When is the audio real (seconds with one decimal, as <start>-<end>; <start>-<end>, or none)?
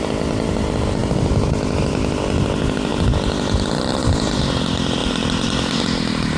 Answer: 0.0-5.0; 5.8-6.4